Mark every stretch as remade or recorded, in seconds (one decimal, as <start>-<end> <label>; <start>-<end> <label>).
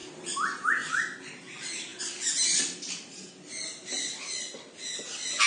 0.0-5.5 recorded